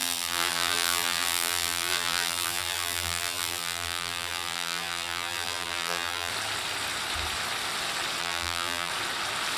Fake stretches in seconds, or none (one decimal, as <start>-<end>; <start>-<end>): 0.0-6.3; 8.2-8.9